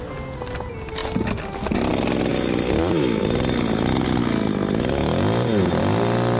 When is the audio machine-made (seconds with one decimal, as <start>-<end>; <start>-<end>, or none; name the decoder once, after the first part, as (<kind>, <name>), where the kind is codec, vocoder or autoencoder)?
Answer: none